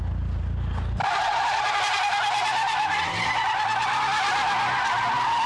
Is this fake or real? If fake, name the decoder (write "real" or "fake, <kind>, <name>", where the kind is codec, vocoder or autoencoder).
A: real